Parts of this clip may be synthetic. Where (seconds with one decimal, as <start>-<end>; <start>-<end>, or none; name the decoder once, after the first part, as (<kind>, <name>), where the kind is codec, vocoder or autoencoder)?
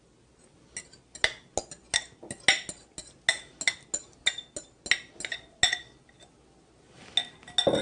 none